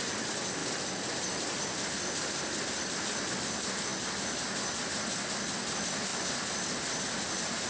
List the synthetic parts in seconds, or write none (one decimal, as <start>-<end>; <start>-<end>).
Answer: none